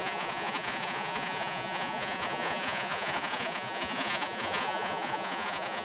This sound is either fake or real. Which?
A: fake